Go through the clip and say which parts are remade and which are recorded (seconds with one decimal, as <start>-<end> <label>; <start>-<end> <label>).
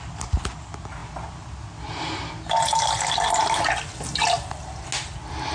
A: 0.0-5.5 recorded